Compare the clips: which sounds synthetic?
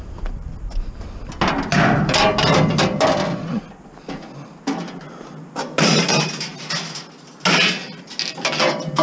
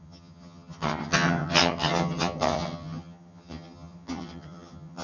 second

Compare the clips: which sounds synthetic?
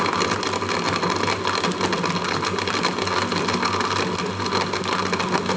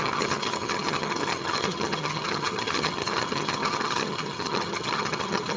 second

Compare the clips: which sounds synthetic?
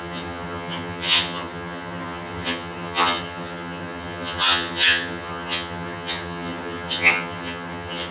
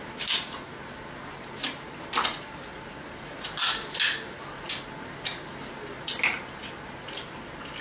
first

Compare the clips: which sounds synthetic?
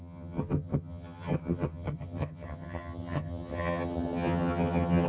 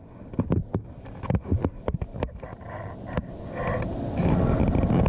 first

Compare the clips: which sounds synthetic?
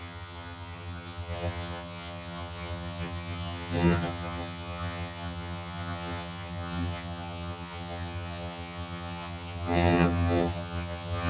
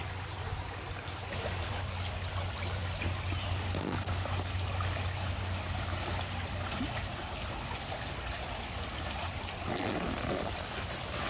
first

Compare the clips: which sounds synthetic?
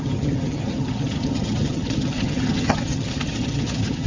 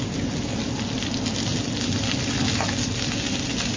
first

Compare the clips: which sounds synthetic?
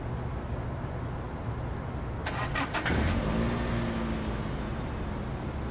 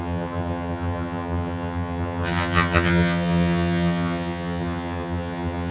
second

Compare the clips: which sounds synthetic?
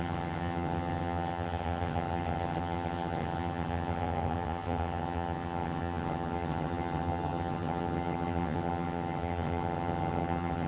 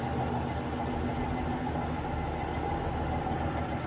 first